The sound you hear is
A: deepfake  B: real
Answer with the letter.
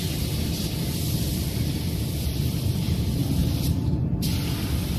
B